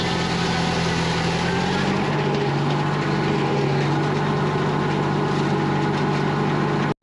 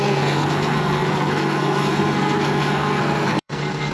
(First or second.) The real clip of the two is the first